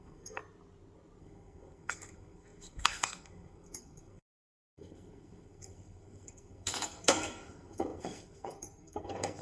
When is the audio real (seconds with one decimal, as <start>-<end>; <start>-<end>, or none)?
0.4-1.2